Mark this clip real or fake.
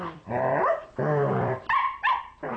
fake